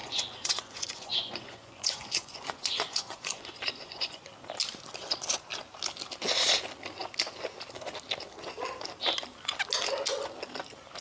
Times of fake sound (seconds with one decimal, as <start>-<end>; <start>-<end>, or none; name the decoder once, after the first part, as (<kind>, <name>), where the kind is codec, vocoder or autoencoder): 0.0-4.3 (vocoder, Vocos)